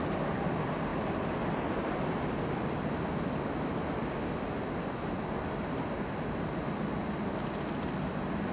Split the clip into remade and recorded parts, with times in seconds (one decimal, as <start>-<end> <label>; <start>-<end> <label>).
0.0-8.5 recorded

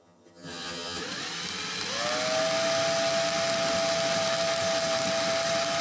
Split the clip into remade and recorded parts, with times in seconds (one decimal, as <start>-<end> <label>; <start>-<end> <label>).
0.0-1.0 remade; 1.0-5.8 recorded

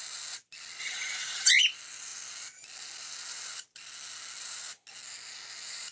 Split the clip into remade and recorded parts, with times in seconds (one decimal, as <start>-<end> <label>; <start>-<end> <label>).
0.0-0.8 recorded; 0.8-1.5 remade; 1.5-5.9 recorded

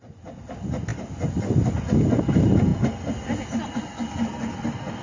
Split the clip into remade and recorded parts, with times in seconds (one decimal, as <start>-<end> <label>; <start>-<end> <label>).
0.0-5.0 recorded

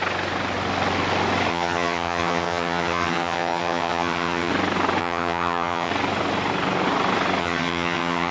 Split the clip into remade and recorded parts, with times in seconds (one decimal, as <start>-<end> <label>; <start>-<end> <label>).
0.0-1.5 recorded; 1.5-4.5 remade; 4.5-5.0 recorded; 5.0-5.9 remade; 5.9-7.4 recorded; 7.4-8.3 remade

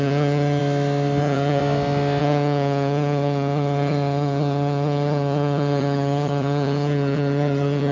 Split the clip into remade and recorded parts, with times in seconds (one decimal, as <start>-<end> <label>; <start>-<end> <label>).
0.0-0.6 remade; 0.6-1.2 recorded; 1.2-1.6 remade; 1.6-2.2 recorded; 2.2-7.9 remade

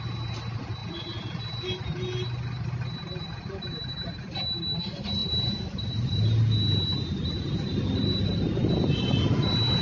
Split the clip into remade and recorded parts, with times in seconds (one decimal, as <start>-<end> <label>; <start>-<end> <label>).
0.0-9.8 recorded